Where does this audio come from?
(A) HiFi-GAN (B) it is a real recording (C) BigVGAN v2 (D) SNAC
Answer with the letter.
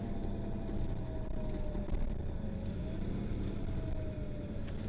B